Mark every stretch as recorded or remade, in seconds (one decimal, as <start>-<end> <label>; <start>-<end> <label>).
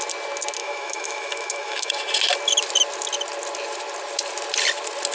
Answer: 0.0-0.6 recorded; 0.6-1.9 remade; 1.9-5.1 recorded